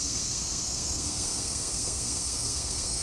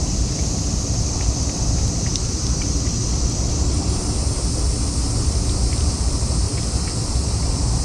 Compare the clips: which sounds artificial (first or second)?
first